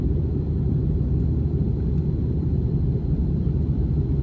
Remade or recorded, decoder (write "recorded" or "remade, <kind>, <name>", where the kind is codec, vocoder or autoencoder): recorded